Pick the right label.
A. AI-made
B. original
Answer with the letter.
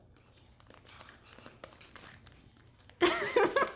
B